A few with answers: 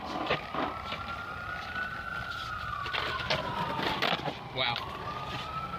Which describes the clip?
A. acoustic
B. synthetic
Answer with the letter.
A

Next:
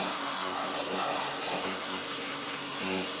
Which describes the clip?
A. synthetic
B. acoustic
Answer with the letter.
A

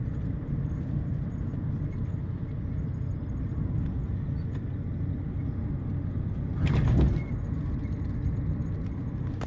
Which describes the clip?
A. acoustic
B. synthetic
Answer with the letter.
A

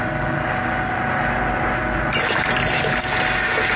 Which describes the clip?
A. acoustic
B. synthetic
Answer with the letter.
A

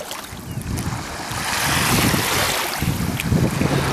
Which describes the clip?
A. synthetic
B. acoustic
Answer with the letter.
B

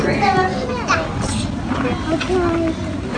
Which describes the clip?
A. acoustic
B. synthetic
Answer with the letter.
A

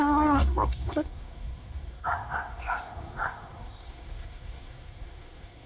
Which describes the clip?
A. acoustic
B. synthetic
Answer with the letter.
B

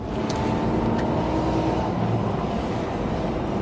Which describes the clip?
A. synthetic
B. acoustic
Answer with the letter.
B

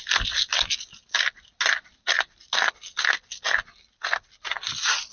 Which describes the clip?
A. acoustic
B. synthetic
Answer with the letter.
A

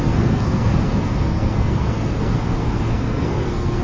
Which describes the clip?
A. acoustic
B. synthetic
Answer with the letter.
B